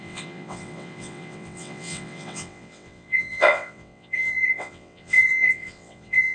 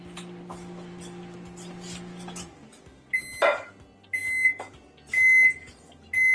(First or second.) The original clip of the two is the second